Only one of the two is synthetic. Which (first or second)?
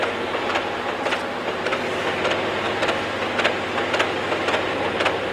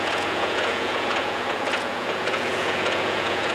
second